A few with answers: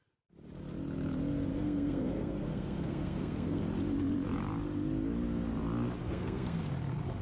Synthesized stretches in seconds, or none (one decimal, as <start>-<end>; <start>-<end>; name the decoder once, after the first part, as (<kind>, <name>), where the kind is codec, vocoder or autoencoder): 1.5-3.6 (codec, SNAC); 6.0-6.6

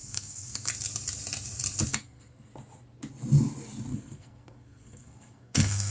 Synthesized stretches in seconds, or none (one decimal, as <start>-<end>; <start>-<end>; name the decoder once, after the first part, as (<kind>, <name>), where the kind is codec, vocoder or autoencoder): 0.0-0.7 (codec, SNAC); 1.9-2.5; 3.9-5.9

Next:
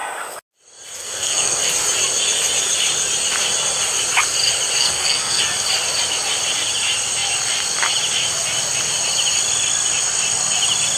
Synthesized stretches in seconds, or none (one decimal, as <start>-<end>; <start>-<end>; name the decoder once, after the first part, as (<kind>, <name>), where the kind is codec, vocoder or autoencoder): 1.0-1.7 (codec, SNAC); 4.8-5.4